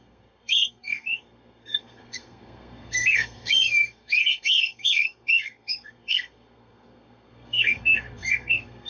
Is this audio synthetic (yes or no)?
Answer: yes